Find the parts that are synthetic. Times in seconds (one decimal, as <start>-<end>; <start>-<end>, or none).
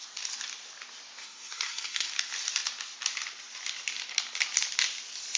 1.2-2.1